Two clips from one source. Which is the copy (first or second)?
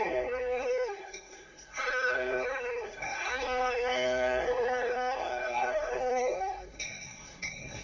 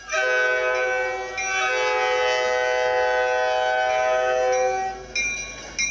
first